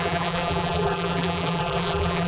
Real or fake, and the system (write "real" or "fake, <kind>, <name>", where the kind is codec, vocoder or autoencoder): fake, vocoder, BigVGAN v2